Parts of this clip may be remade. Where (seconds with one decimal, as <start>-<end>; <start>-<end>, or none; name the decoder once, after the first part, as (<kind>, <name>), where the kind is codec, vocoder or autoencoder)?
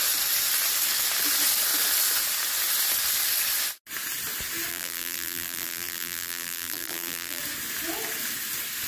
4.7-7.4 (vocoder, BigVGAN v2)